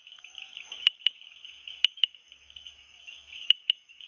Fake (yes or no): yes